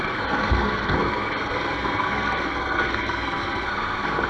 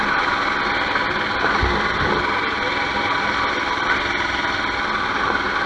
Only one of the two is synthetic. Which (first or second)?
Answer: first